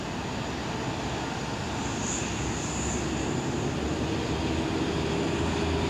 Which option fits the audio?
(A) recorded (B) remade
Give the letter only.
A